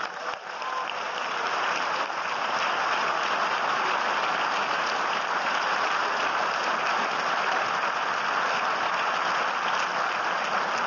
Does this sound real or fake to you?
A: real